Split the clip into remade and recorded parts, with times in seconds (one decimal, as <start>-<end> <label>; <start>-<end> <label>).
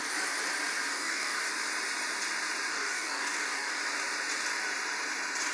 0.0-0.9 recorded; 0.9-1.5 remade; 1.5-2.7 recorded; 2.7-3.8 remade; 3.8-5.5 recorded